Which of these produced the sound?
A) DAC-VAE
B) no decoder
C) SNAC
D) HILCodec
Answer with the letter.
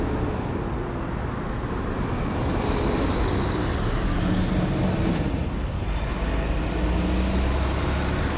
B